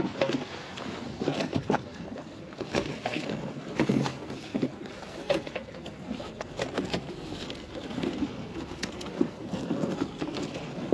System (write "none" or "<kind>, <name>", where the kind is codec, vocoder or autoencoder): codec, SNAC